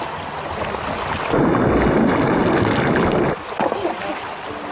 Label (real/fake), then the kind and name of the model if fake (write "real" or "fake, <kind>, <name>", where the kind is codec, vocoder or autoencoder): real